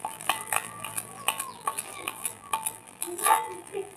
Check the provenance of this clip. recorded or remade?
remade